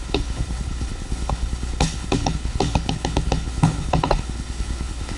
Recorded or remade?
remade